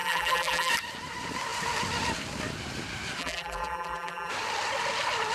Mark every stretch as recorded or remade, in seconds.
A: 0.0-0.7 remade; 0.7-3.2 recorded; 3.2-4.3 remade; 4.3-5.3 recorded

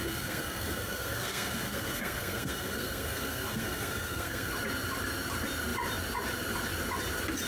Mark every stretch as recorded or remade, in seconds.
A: 0.0-4.5 remade; 4.5-7.5 recorded

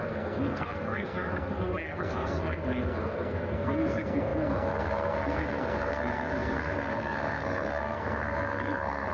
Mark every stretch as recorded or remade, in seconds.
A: 0.0-9.1 remade

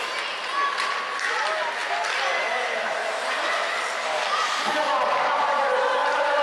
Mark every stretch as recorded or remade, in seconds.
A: 0.0-6.4 recorded

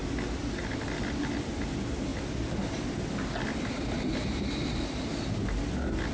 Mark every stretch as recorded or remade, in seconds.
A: 0.0-6.1 recorded